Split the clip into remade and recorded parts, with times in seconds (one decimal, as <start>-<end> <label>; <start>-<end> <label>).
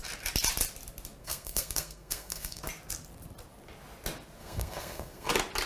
0.0-1.2 recorded; 1.2-2.6 remade; 2.6-4.4 recorded; 4.4-5.3 remade; 5.3-5.7 recorded